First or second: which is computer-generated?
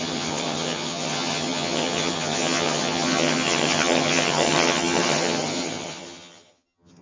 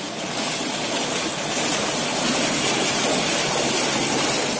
first